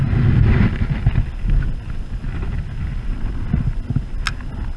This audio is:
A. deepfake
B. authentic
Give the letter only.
B